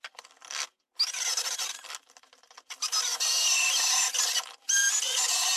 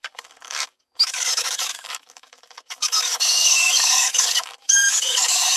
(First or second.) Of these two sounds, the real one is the first